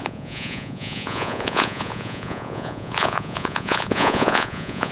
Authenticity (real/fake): fake